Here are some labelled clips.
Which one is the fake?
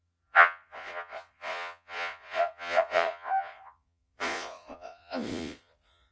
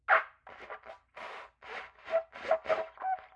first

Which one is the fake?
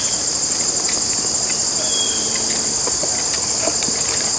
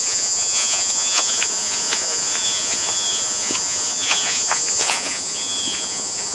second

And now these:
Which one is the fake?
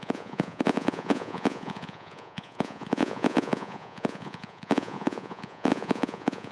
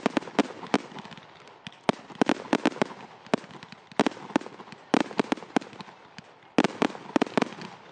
first